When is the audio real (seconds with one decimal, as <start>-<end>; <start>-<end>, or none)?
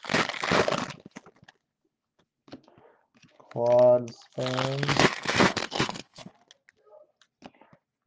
0.0-4.9; 6.3-8.1